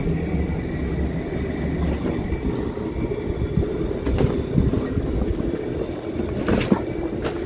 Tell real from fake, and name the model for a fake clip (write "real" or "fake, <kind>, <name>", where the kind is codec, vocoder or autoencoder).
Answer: real